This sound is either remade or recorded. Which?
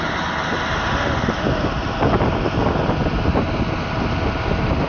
recorded